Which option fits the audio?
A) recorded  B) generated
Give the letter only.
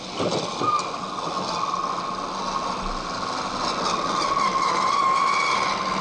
A